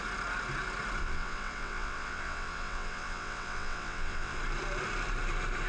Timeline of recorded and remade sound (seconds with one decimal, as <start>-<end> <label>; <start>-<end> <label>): 0.0-1.0 recorded; 1.0-4.4 remade; 4.4-5.7 recorded